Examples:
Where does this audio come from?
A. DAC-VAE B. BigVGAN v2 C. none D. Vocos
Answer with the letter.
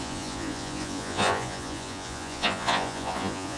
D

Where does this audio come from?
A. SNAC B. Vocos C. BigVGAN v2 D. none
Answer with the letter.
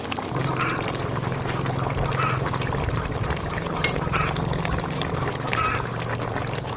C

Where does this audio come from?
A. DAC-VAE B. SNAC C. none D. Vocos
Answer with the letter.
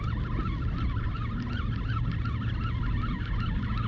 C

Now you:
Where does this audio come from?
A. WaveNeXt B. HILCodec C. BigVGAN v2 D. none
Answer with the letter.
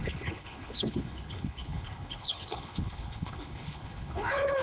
B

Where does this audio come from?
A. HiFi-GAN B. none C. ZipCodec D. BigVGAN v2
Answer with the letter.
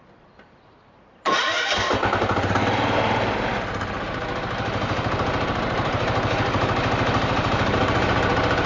D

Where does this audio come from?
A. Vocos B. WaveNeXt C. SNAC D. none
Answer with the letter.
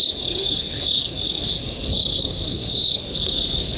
C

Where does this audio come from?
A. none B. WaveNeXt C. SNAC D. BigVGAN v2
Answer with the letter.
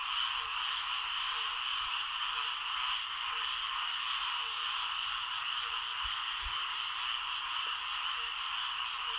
D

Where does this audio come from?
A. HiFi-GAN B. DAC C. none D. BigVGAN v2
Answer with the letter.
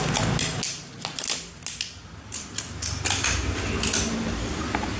C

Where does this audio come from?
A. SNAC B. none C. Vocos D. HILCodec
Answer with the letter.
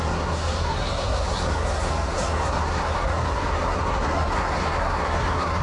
A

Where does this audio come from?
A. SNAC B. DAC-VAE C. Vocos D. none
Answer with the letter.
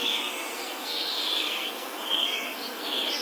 A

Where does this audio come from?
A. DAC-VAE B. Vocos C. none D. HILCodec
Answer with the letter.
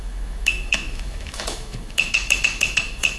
A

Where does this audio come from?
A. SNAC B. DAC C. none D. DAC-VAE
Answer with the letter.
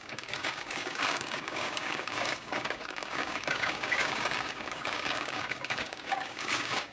B